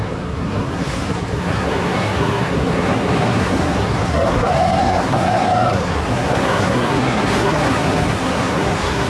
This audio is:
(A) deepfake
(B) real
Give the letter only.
A